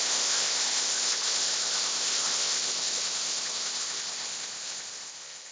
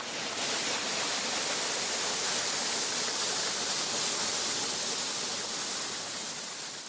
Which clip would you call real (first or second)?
second